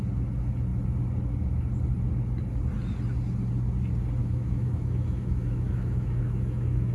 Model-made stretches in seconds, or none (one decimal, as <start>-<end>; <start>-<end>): 4.2-6.9

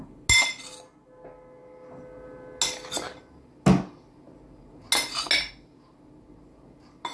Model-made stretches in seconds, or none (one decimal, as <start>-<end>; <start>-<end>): none

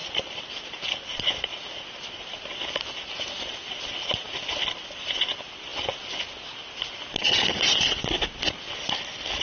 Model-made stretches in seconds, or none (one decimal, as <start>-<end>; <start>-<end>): none